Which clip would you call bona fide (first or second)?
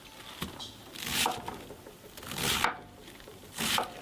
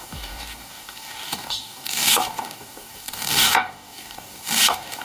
first